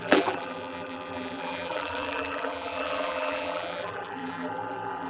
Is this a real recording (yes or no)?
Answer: no